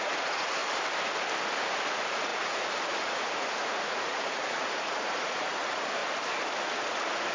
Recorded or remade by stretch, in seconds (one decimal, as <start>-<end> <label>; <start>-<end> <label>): 0.0-0.6 remade; 0.6-1.7 recorded; 1.7-6.0 remade; 6.0-6.6 recorded; 6.6-7.3 remade